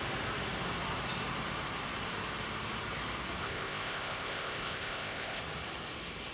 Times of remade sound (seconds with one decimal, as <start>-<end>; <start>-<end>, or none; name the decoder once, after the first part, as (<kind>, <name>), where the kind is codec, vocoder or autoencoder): 3.4-5.4 (codec, ZipCodec)